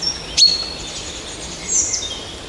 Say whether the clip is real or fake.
real